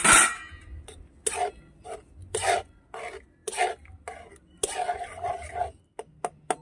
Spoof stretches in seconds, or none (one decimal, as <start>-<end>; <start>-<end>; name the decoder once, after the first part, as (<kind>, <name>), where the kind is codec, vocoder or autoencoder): 2.2-2.8 (vocoder, Vocos)